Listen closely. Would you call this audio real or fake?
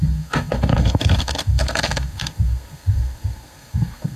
fake